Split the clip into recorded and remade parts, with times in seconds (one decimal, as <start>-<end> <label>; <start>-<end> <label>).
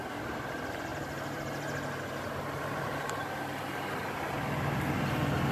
0.0-5.5 recorded